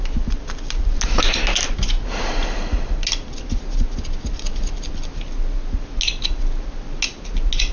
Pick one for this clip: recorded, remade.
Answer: recorded